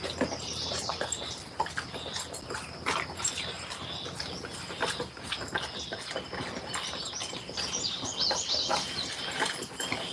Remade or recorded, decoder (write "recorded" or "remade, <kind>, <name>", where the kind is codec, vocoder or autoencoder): recorded